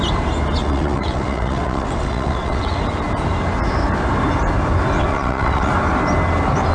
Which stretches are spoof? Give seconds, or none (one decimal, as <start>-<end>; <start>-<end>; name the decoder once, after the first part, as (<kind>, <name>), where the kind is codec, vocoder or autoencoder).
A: 0.6-2.8 (vocoder, WaveNeXt); 5.1-5.7